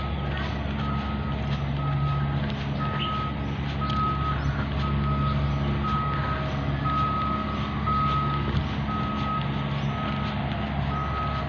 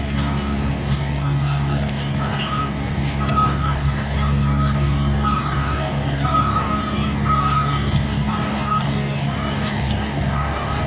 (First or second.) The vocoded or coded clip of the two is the second